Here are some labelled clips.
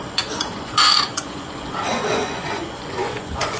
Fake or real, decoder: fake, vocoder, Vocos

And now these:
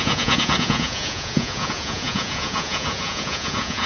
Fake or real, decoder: fake, vocoder, Vocos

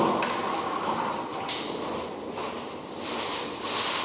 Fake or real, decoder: real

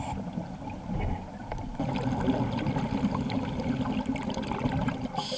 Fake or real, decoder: real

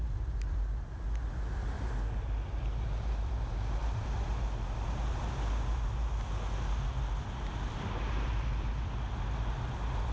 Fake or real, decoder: real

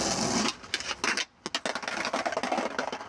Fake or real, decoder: real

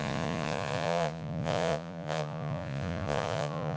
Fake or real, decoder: fake, vocoder, Vocos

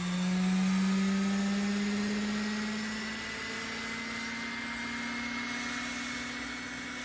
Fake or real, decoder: real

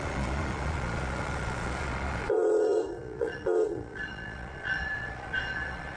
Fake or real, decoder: fake, vocoder, Vocos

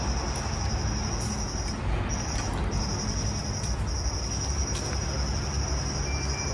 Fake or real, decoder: real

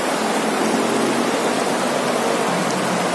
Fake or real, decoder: real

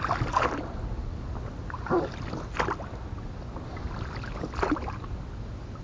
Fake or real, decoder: real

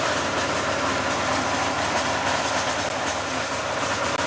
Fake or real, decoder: real